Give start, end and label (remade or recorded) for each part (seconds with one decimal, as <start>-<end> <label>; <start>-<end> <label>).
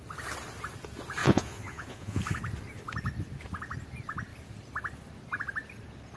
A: 0.0-1.2 recorded; 1.2-2.2 remade; 2.2-6.2 recorded